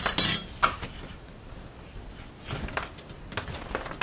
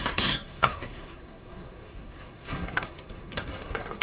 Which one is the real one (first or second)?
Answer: first